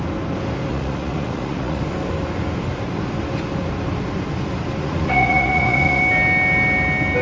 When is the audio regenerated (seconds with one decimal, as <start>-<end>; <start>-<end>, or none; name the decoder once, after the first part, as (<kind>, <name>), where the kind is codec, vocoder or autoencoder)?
0.7-1.8 (vocoder, Vocos); 4.8-6.0